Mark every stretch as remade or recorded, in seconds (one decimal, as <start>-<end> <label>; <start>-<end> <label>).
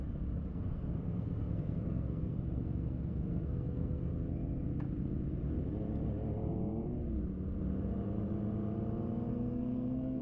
0.0-0.5 recorded; 0.5-4.1 remade; 4.1-9.3 recorded; 9.3-10.2 remade